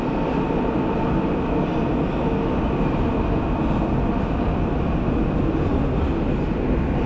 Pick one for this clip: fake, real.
real